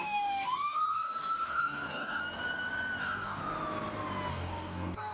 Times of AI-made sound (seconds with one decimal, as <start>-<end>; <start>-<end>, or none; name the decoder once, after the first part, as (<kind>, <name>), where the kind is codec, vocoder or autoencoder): 0.0-2.2 (codec, DAC); 3.0-3.4; 4.3-5.1